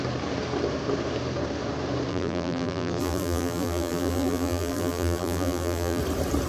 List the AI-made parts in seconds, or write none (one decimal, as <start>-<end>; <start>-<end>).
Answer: 2.1-6.0